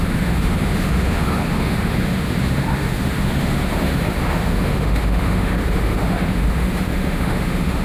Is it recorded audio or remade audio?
remade